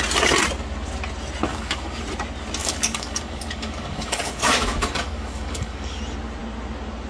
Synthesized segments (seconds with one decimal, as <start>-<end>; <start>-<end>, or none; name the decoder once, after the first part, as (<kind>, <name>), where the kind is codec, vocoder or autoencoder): 1.5-2.0 (codec, DAC); 2.6-6.0